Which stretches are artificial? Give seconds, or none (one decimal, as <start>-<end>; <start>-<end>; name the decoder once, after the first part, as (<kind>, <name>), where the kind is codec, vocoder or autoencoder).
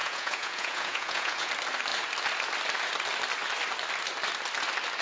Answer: 0.0-1.5 (vocoder, Vocos)